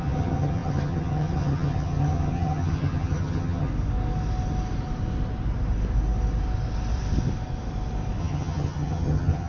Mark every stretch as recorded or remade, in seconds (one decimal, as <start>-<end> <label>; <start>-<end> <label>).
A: 0.0-3.7 remade; 3.7-8.2 recorded; 8.2-9.5 remade